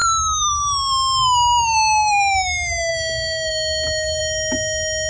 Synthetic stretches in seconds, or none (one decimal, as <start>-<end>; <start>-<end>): none